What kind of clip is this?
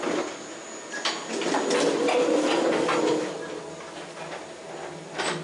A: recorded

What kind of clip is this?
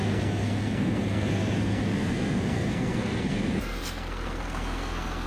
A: remade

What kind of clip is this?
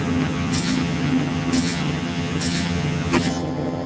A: remade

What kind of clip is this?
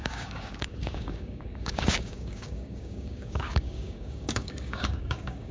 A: remade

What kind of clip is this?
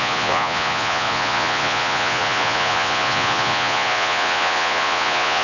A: remade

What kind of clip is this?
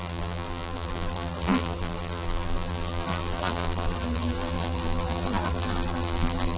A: remade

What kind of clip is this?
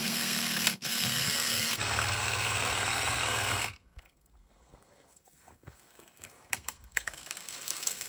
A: remade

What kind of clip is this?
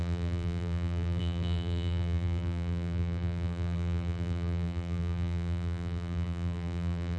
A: remade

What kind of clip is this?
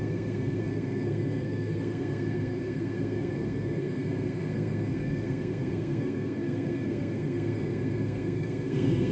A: remade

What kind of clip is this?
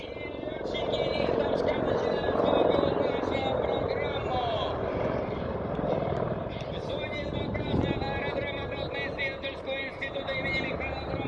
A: recorded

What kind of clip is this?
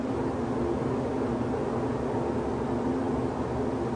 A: recorded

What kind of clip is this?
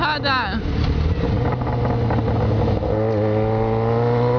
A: recorded